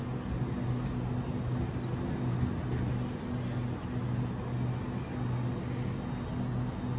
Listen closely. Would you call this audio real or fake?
real